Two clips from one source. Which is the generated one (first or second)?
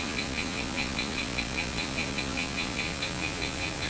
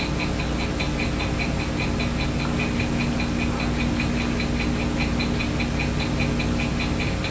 first